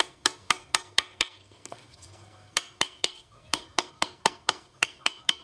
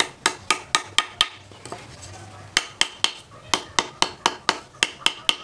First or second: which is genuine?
second